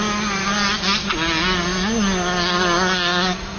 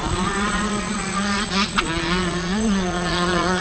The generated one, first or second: second